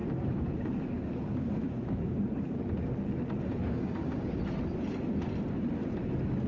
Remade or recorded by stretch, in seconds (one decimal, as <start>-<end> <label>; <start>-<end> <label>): 0.0-2.2 remade; 2.2-3.6 recorded; 3.6-4.4 remade; 4.4-6.5 recorded